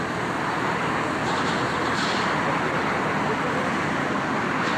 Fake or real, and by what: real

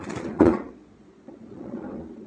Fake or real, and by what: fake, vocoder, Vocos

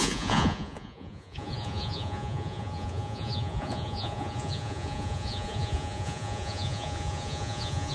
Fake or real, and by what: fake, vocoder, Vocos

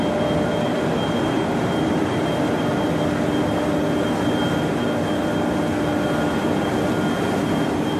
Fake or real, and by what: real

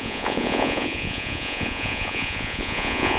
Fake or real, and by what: fake, vocoder, Vocos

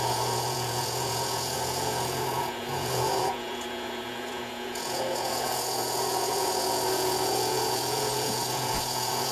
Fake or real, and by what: fake, vocoder, Vocos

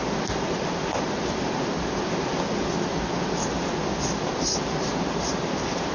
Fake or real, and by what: real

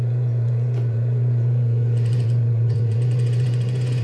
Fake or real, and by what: fake, vocoder, Vocos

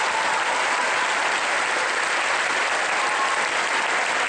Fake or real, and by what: real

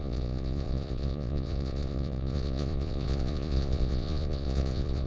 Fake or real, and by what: fake, vocoder, Vocos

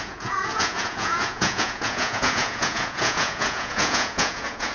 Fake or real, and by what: fake, vocoder, Vocos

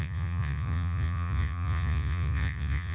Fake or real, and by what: fake, vocoder, Vocos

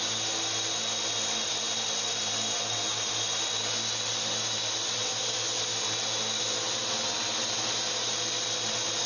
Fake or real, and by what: real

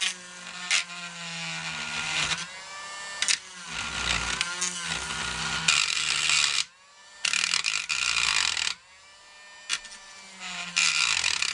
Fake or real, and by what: real